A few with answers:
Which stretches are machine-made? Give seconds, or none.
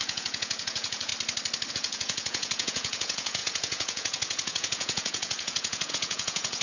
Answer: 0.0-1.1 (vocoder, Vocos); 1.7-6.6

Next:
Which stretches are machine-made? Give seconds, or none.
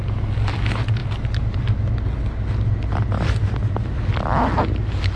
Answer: none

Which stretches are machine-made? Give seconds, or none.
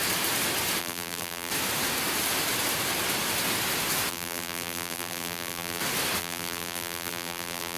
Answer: 0.8-1.5 (vocoder, BigVGAN v2); 4.1-5.8; 6.2-7.8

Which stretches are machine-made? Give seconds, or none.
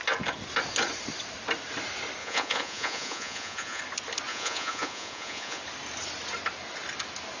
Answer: 2.2-3.8 (vocoder, Vocos); 4.3-5.6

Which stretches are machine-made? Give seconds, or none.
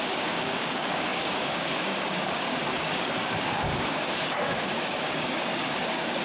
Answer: 0.0-6.2 (codec, DAC)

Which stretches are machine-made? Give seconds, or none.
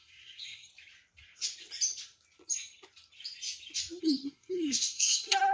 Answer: 0.0-0.7 (codec, SNAC); 4.0-5.5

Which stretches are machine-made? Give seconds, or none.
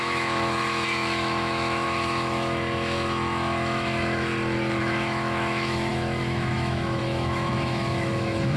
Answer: 0.0-4.3 (autoencoder, DAC-VAE); 4.8-8.6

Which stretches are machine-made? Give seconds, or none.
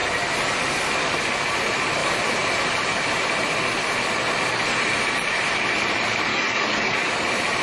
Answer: 6.3-7.1 (codec, DAC)